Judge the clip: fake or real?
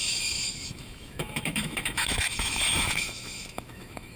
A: fake